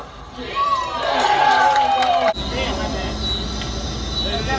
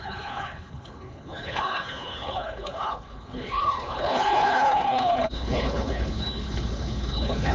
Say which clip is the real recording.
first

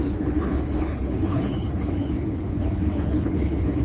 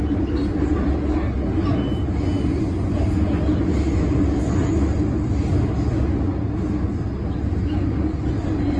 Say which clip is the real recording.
second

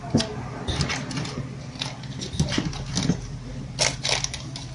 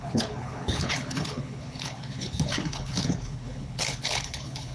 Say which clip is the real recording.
first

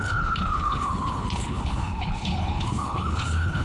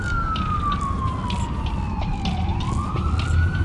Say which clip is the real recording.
second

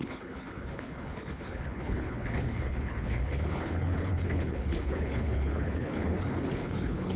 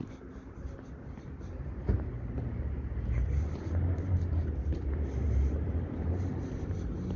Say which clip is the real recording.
second